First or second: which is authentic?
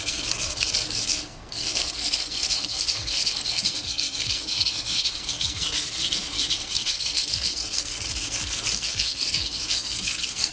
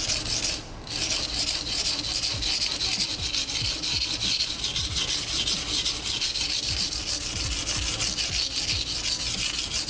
second